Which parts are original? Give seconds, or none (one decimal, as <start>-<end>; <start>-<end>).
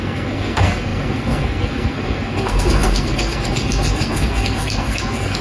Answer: none